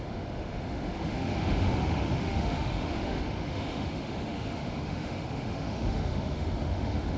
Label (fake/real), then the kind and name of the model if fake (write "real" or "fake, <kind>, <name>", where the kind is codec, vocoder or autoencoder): fake, autoencoder, DAC-VAE